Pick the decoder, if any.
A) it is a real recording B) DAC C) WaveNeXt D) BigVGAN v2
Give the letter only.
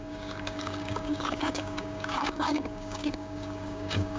B